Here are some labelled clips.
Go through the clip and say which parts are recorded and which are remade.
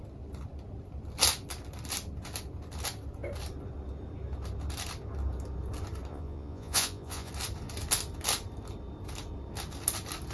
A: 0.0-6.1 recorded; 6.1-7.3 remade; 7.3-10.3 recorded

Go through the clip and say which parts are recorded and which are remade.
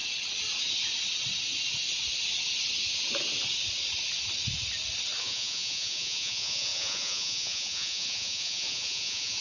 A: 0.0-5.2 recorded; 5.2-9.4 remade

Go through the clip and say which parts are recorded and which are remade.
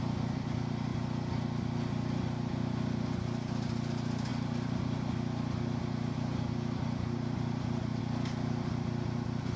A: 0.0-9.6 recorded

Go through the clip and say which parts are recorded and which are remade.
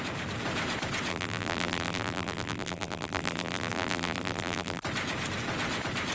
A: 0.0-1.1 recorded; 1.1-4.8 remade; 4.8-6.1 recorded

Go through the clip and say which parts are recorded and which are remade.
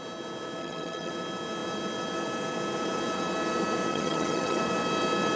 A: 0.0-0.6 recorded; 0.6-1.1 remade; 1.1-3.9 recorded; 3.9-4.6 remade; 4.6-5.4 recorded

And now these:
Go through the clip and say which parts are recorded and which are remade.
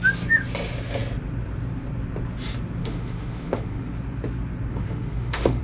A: 0.0-2.8 recorded; 2.8-3.9 remade; 3.9-4.7 recorded; 4.7-5.6 remade